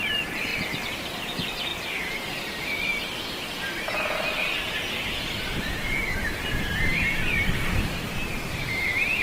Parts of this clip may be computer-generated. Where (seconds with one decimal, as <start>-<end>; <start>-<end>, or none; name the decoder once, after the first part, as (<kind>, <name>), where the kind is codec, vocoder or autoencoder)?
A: 0.0-0.5 (vocoder, BigVGAN v2); 1.0-2.9; 4.4-9.2